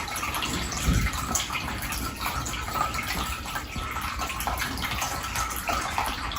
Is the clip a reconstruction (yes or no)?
no